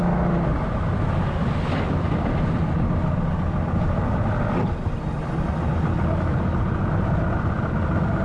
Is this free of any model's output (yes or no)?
yes